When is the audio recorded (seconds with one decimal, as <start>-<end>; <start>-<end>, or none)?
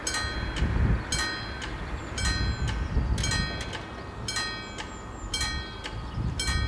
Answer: 0.0-6.7